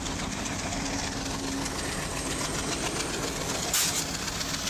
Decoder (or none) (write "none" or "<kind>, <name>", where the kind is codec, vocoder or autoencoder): none